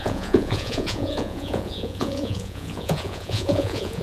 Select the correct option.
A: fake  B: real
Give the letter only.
A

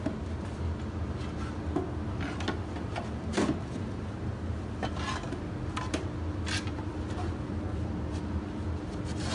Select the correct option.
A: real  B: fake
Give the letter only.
A